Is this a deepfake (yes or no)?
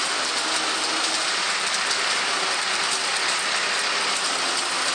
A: no